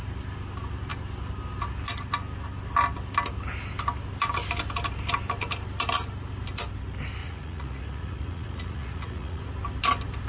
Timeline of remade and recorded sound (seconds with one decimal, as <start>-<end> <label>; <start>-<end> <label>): 0.0-7.2 recorded; 7.2-9.4 remade; 9.4-10.3 recorded